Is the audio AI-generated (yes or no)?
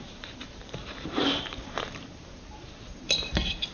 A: yes